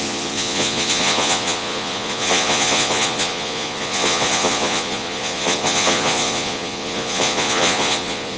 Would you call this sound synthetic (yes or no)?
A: yes